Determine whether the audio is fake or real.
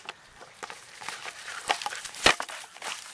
fake